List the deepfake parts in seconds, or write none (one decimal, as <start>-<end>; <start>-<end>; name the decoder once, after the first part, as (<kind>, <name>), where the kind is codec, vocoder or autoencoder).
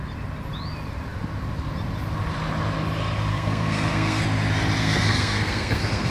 3.3-4.2 (codec, SNAC); 4.8-6.1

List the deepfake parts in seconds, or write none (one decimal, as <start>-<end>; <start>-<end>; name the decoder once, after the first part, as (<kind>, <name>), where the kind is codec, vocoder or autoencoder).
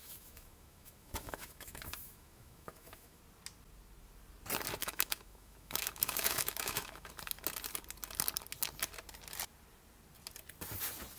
0.0-3.2 (autoencoder, DAC-VAE); 4.8-7.1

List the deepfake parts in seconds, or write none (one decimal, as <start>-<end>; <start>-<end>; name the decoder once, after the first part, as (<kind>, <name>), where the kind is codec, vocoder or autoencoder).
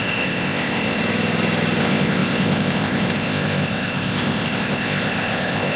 0.0-1.0 (codec, ZipCodec); 1.8-5.8